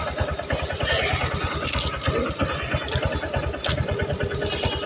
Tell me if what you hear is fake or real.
real